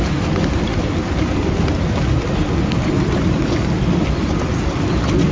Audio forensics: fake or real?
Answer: real